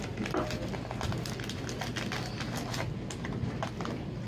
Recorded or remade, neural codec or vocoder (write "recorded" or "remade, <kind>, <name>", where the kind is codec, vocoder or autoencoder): recorded